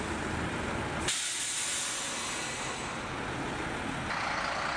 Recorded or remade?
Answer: recorded